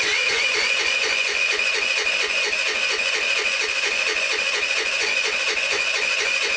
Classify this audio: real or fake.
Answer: fake